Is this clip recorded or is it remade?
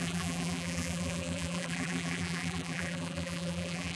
remade